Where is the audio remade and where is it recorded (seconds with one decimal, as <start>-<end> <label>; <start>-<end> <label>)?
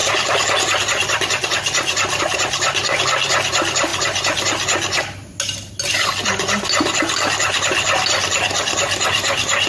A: 0.0-9.7 recorded